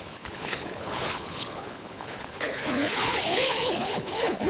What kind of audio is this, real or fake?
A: fake